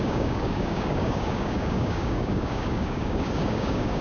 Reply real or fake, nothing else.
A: fake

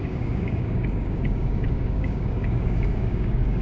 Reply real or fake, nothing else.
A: fake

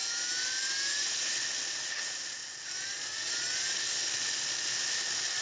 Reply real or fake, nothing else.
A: real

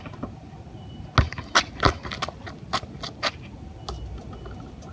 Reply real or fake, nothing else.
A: real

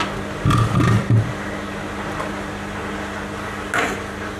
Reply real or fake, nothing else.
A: real